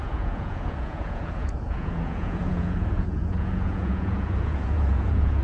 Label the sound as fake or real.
fake